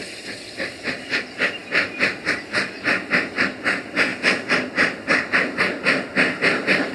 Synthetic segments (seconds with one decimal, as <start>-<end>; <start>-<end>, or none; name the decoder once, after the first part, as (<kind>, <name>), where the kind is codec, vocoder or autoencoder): none